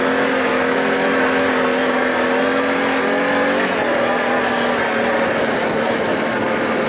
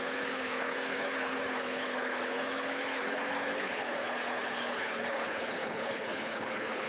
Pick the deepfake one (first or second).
second